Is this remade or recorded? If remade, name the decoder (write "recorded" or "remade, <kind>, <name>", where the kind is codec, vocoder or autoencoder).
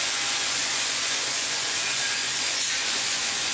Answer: remade, vocoder, Vocos